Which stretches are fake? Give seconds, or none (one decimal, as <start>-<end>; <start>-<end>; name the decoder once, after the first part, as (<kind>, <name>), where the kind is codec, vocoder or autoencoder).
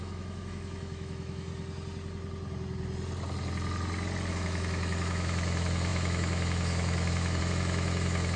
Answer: 0.0-1.5 (autoencoder, DAC-VAE); 4.3-8.4